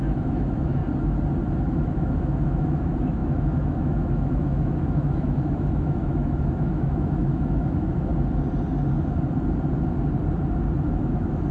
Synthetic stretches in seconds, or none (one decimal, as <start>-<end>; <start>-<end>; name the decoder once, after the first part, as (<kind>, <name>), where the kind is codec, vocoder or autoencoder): 0.0-0.8 (autoencoder, DAC-VAE); 1.7-8.1; 11.0-11.5